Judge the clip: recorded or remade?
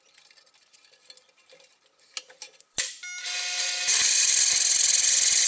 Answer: recorded